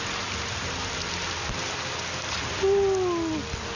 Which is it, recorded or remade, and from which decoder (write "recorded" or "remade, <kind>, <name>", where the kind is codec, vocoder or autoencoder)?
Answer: recorded